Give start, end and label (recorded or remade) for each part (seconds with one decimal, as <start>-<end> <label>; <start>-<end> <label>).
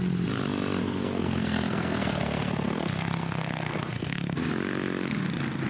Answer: 0.0-0.8 recorded; 0.8-4.2 remade; 4.2-5.7 recorded